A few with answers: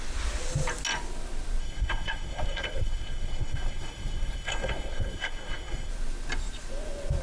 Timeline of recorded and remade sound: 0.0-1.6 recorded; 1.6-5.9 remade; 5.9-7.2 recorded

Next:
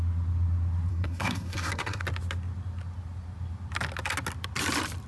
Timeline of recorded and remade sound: 0.0-0.9 recorded; 0.9-2.0 remade; 2.0-5.1 recorded

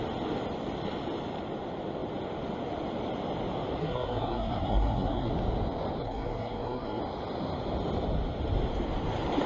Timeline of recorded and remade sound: 0.0-3.8 recorded; 3.8-5.3 remade; 5.3-6.0 recorded; 6.0-7.0 remade; 7.0-9.5 recorded

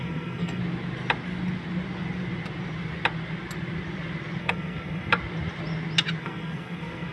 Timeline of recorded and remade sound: 0.0-0.6 remade; 0.6-4.4 recorded; 4.4-5.1 remade; 5.1-6.2 recorded; 6.2-7.1 remade

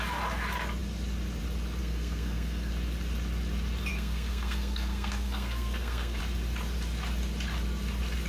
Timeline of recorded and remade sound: 0.0-1.8 recorded; 1.8-2.7 remade; 2.7-3.9 recorded; 3.9-6.2 remade; 6.2-8.3 recorded

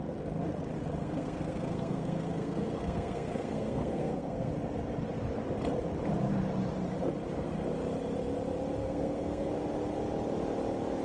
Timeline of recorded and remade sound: 0.0-1.0 recorded; 1.0-4.5 remade; 4.5-8.8 recorded; 8.8-9.5 remade; 9.5-11.0 recorded